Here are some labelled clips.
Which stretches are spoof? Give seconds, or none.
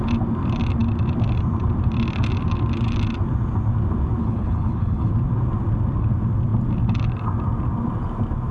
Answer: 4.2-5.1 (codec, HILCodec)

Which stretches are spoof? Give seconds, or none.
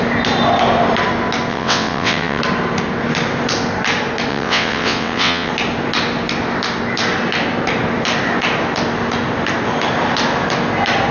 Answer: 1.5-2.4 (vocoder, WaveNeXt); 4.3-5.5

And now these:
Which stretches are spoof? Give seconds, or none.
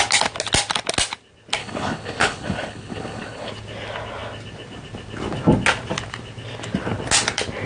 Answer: 1.6-3.5 (codec, HILCodec)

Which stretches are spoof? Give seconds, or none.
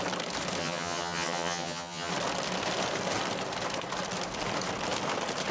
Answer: 0.6-2.1 (vocoder, HiFi-GAN)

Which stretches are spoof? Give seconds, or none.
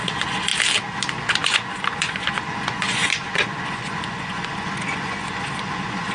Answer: 0.0-0.5 (vocoder, Vocos); 1.1-6.1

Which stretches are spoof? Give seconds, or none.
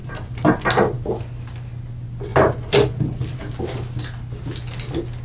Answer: none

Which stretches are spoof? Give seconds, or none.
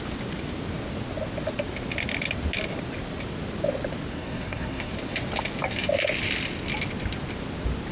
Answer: 4.1-4.9 (codec, SNAC)